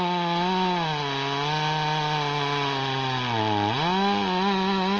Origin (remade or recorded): recorded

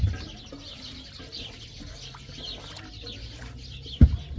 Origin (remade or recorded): recorded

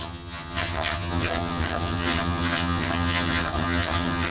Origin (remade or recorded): remade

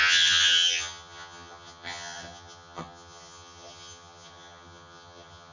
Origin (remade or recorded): remade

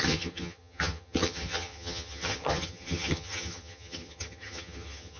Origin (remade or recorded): remade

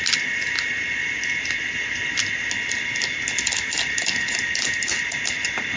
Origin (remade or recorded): recorded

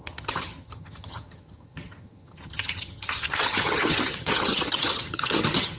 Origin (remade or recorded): remade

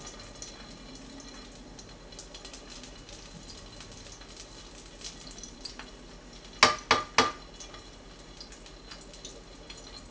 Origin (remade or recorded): recorded